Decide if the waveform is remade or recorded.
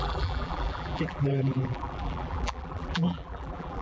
remade